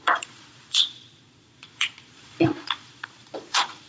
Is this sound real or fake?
fake